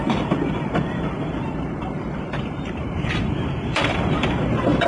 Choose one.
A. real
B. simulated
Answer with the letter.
B